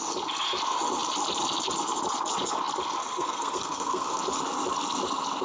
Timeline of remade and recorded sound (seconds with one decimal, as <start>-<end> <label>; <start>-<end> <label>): 0.0-3.0 recorded; 3.0-4.2 remade; 4.2-5.4 recorded